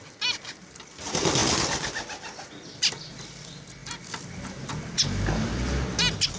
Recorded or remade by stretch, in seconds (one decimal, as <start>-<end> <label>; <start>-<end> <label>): 0.0-6.4 recorded